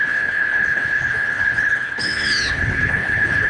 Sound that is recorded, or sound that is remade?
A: remade